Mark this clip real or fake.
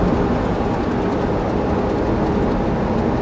real